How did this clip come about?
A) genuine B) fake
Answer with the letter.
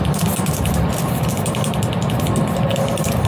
B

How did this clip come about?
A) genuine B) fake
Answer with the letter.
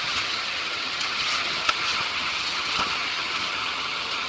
B